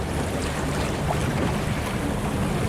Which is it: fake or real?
real